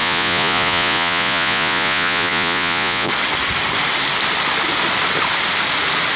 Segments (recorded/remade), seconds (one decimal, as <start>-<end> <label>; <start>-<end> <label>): 0.0-3.1 remade; 3.1-6.2 recorded